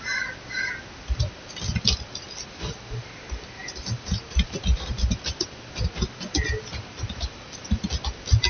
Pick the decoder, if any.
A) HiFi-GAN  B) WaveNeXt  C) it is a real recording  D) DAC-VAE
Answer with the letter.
C